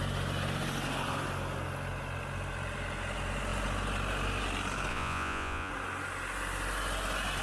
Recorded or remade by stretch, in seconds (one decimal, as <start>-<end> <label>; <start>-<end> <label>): 0.0-4.9 recorded; 4.9-5.7 remade; 5.7-7.4 recorded